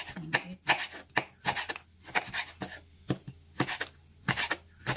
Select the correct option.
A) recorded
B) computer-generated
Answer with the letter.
A